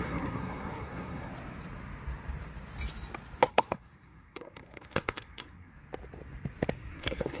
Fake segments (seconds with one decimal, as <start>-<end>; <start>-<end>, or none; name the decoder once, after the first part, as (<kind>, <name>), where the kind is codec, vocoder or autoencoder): 0.0-1.3 (codec, SNAC); 3.5-5.7; 6.7-7.4